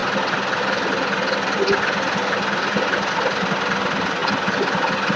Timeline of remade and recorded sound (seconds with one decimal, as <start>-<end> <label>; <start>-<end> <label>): 0.0-5.2 recorded